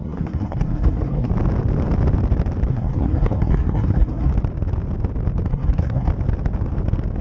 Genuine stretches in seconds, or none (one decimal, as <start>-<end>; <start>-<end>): 1.3-2.7; 4.3-5.5; 6.1-7.2